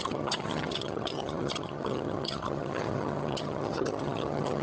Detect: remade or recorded remade